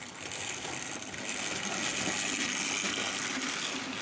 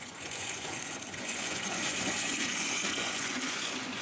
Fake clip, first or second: second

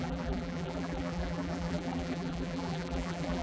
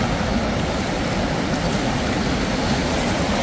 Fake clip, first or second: first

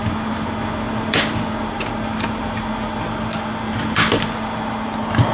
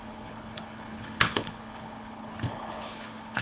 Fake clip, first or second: second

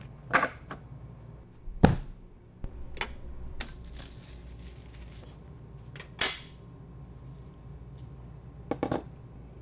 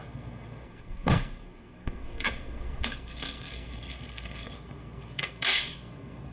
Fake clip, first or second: second